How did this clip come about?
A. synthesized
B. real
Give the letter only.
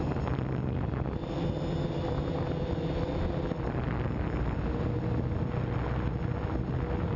B